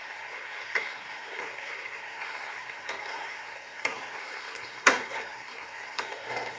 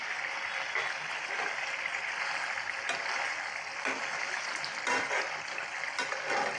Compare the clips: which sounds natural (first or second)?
second